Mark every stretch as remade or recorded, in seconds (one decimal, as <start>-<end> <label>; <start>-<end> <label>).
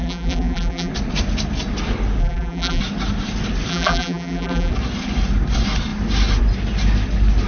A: 0.0-0.9 remade; 0.9-2.2 recorded; 2.2-2.8 remade; 2.8-3.7 recorded; 3.7-4.7 remade; 4.7-7.5 recorded